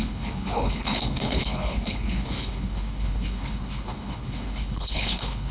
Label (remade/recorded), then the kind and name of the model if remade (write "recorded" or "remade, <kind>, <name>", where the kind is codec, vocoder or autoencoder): remade, codec, HILCodec